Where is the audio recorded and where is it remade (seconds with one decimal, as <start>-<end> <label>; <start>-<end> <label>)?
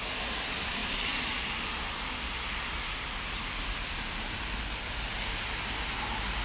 0.0-6.4 recorded